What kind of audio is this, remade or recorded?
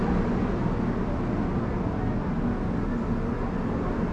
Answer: recorded